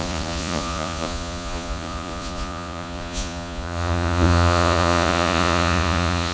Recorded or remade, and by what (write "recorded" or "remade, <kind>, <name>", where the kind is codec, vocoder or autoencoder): remade, vocoder, Vocos